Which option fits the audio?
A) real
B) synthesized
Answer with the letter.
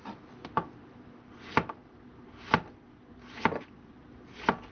A